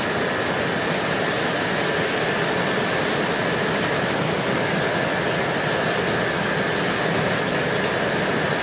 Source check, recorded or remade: recorded